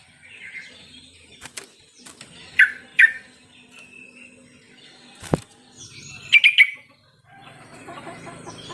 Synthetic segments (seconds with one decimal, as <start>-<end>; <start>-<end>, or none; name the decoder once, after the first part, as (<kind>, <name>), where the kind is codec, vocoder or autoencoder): 7.8-8.7 (vocoder, BigVGAN v2)